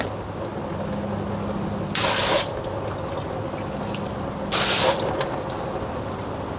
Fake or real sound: real